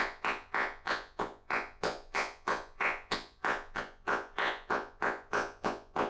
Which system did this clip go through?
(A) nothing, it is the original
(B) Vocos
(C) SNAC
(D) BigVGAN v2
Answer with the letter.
B